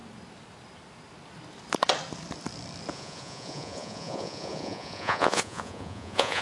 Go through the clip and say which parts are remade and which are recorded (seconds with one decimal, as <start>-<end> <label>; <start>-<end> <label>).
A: 0.0-2.9 recorded; 2.9-6.4 remade